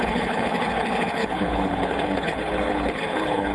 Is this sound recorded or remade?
remade